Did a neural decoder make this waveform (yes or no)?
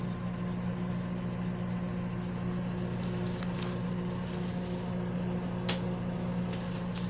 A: no